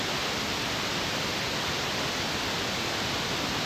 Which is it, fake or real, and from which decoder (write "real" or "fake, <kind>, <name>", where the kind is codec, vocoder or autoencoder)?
real